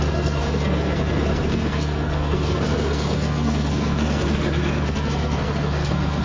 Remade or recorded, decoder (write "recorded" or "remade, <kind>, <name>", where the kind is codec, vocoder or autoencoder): remade, codec, SNAC